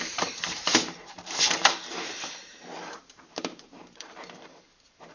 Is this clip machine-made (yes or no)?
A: yes